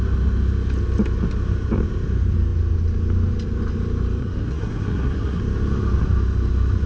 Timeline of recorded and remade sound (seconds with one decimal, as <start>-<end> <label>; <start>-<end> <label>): 0.0-4.2 recorded; 4.2-5.4 remade; 5.4-6.9 recorded